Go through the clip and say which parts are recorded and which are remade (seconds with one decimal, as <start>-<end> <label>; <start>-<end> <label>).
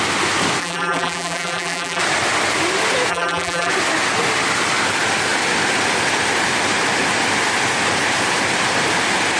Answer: 0.0-0.6 recorded; 0.6-2.0 remade; 2.0-3.1 recorded; 3.1-3.7 remade; 3.7-9.4 recorded